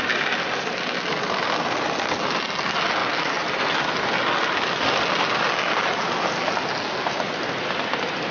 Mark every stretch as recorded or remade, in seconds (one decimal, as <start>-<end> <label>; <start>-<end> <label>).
0.0-8.3 recorded